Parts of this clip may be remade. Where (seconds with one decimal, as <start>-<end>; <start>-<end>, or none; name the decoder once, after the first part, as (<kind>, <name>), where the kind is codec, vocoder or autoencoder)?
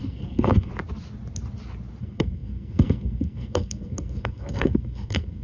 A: 0.0-0.7 (codec, SNAC); 2.0-5.4